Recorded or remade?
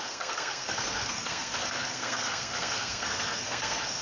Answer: remade